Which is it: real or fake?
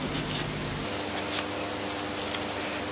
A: real